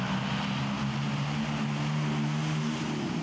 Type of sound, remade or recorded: recorded